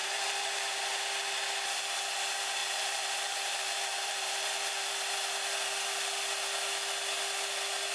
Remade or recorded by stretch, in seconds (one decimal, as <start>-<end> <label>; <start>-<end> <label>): 0.0-0.8 remade; 0.8-2.6 recorded; 2.6-4.9 remade; 4.9-7.9 recorded